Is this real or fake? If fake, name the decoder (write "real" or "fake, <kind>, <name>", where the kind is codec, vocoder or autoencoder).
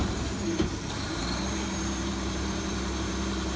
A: fake, vocoder, BigVGAN v2